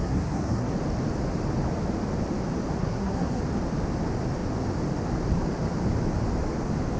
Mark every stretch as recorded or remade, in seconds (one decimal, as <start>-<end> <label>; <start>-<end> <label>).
0.0-0.7 remade; 0.7-2.8 recorded; 2.8-3.4 remade; 3.4-7.0 recorded